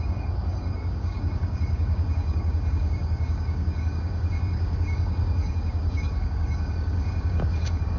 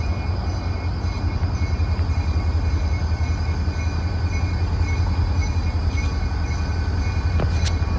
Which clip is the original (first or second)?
second